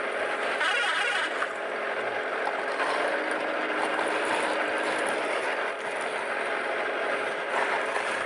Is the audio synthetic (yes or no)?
yes